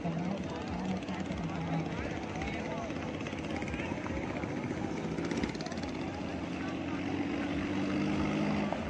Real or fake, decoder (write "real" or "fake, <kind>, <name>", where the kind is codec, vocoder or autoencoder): real